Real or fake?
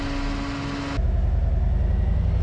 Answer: real